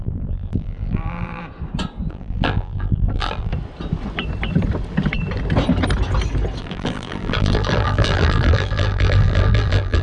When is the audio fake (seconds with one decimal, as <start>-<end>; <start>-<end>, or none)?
0.0-1.4; 2.1-3.5; 6.6-10.0

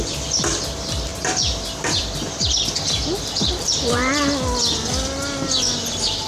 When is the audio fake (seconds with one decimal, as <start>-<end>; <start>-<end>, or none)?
1.1-4.9

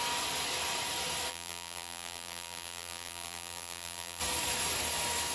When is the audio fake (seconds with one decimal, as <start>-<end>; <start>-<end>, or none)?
1.3-4.2

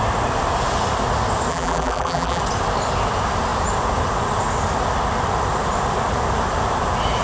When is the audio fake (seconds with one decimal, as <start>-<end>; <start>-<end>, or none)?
1.5-2.4

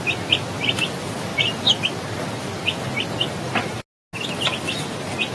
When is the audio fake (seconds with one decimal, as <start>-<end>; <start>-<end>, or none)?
none